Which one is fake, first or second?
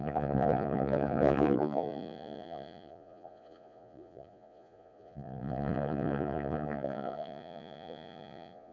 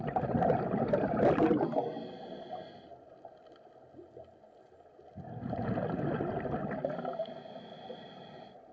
first